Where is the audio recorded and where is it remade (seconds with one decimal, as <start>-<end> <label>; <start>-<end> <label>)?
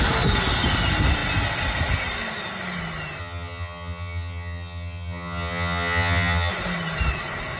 0.0-3.2 recorded; 3.2-6.5 remade; 6.5-7.6 recorded